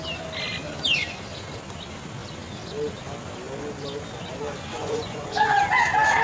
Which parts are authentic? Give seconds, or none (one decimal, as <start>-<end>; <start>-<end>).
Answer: 0.0-4.7; 5.6-6.2